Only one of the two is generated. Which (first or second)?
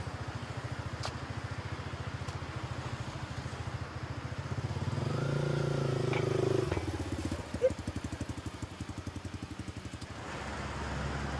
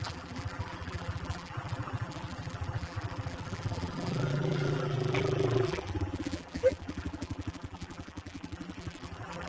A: second